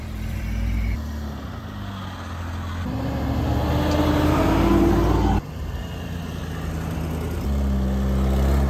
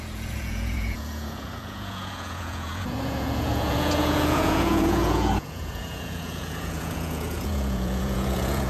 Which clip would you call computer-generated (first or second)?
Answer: second